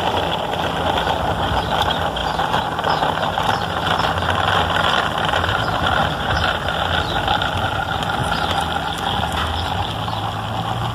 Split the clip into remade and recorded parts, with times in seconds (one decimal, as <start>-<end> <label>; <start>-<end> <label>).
0.0-2.2 recorded; 2.2-3.4 remade; 3.4-10.9 recorded